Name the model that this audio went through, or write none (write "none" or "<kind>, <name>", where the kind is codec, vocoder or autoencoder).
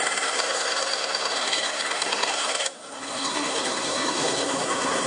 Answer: codec, SNAC